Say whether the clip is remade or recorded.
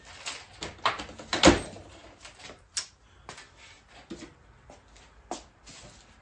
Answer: recorded